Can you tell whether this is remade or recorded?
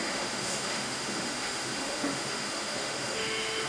remade